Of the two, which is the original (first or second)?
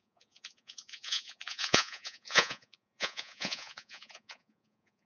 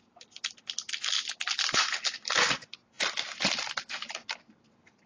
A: second